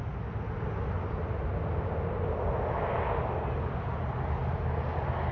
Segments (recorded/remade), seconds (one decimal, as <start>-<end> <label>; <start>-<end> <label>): 0.0-5.3 recorded